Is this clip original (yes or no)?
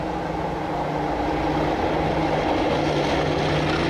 yes